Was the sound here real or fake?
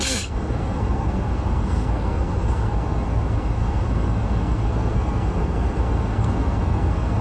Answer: fake